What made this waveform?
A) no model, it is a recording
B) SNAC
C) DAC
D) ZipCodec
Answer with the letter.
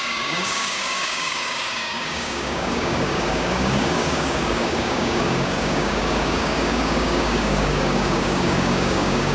C